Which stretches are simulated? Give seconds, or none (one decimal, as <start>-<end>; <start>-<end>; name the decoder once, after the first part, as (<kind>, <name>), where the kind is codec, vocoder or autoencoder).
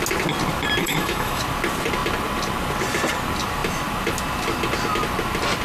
0.8-1.4 (autoencoder, DAC-VAE)